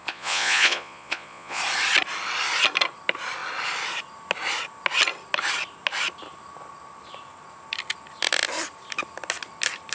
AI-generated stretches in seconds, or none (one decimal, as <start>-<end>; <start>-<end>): 0.0-1.6